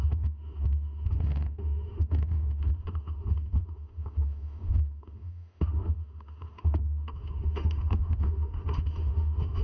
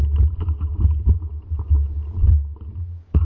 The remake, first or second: first